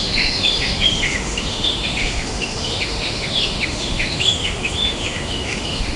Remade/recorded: remade